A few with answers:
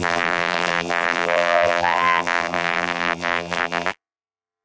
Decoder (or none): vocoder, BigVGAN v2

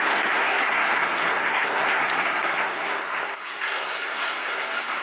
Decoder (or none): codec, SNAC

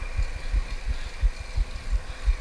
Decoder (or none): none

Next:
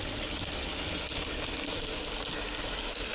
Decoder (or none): none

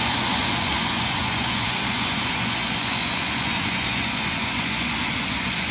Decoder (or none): vocoder, Vocos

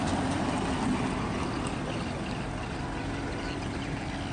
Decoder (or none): none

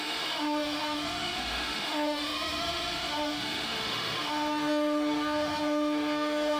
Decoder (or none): autoencoder, DAC-VAE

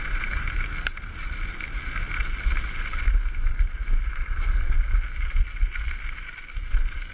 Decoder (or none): none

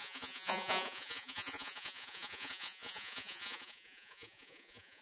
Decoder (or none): vocoder, Vocos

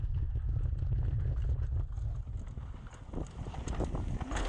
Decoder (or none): none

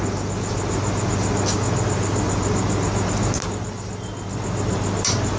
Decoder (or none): none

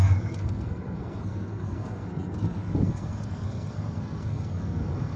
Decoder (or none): codec, SNAC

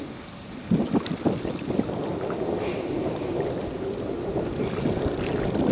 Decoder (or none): none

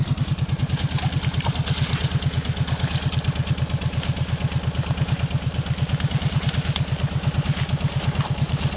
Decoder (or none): none